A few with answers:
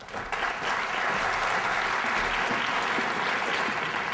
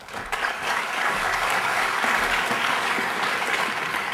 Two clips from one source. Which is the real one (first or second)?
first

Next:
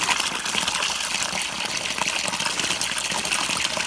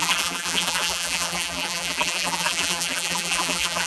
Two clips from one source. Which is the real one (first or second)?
first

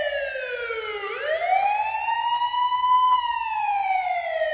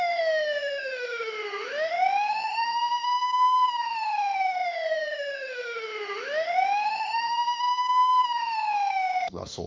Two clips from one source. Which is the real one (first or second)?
first